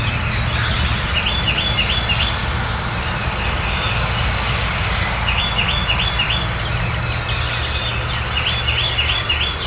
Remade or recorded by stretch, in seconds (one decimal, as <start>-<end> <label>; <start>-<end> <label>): 0.0-3.2 recorded; 3.2-5.4 remade; 5.4-9.7 recorded